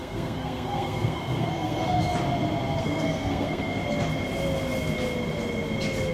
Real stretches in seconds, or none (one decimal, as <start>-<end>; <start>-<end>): 2.1-2.8; 3.8-6.1

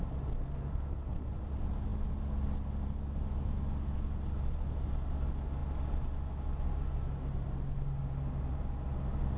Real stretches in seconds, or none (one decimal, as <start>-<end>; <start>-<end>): 0.0-0.4; 1.3-9.4

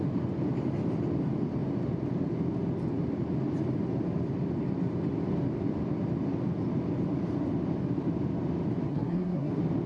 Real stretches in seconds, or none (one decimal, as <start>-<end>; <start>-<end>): 0.0-8.9; 9.5-9.9

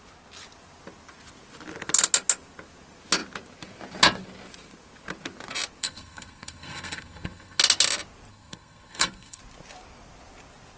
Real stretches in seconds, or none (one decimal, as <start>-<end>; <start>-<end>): 0.0-5.8; 7.6-8.3; 9.4-10.8

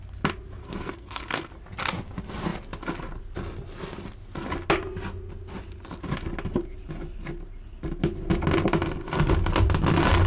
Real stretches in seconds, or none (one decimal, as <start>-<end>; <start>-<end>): 0.0-0.6; 1.5-10.3

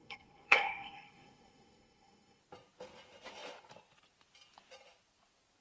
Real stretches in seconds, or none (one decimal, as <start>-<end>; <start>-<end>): 2.4-5.6

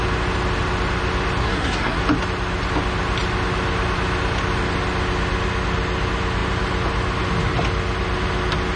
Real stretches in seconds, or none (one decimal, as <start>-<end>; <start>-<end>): 0.0-1.4; 2.0-8.8